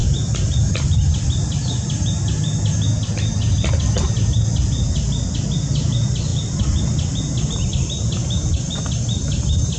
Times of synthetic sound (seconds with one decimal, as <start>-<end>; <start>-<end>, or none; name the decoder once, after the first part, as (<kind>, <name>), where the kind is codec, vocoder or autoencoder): none